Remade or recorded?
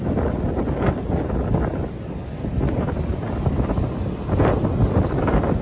recorded